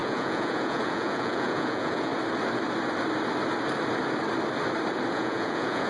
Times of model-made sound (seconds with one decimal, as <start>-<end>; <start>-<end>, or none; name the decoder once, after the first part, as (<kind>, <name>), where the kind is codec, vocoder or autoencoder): 0.0-2.1 (vocoder, Vocos); 5.1-5.9